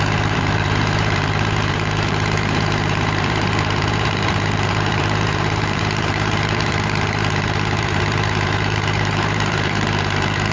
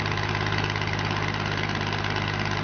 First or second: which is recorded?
second